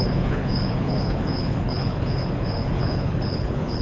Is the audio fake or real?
fake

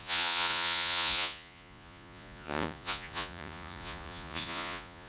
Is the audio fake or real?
fake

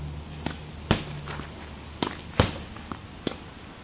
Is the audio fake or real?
real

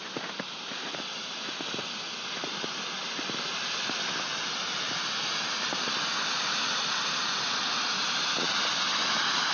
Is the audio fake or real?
real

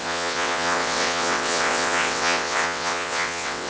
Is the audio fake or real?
fake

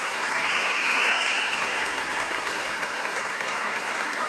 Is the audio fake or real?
fake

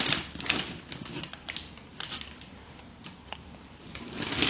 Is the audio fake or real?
real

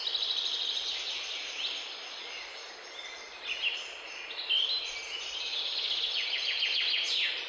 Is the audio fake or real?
real